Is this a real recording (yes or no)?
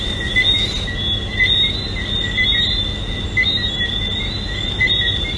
yes